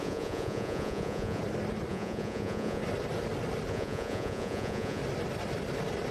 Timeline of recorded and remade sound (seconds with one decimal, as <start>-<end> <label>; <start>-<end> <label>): 0.0-1.4 remade; 1.4-1.9 recorded; 1.9-2.8 remade; 2.8-3.7 recorded; 3.7-5.0 remade; 5.0-6.1 recorded